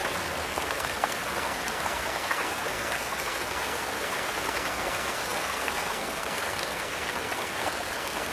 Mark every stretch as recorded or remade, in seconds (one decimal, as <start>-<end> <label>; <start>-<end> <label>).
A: 0.0-8.3 remade